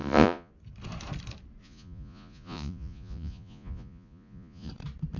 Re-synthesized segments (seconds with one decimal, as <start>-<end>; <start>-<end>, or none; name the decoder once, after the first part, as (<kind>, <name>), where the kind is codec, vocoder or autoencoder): 0.0-0.5 (vocoder, Vocos); 1.6-4.7